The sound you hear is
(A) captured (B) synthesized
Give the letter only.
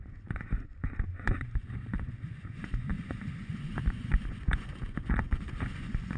B